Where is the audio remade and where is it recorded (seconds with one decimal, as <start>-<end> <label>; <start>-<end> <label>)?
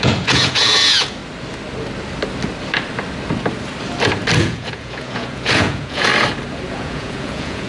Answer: 0.0-1.2 remade; 1.2-4.4 recorded; 4.4-6.1 remade; 6.1-6.7 recorded; 6.7-7.7 remade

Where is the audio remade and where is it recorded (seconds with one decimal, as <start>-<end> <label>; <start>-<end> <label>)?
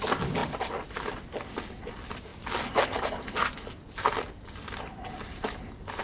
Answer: 0.0-6.0 recorded